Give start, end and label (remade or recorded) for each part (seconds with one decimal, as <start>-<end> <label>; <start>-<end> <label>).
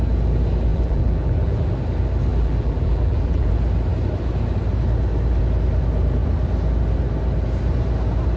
0.0-0.7 recorded; 0.7-1.7 remade; 1.7-2.3 recorded; 2.3-3.5 remade; 3.5-8.4 recorded